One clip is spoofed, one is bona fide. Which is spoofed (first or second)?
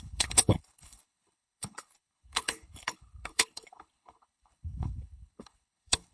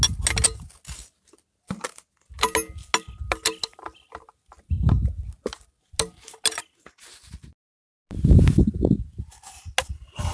first